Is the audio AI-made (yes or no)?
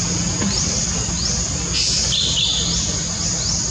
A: no